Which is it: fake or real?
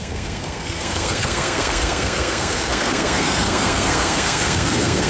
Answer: fake